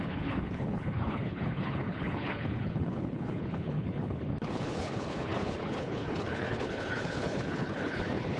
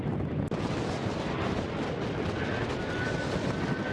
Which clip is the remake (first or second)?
first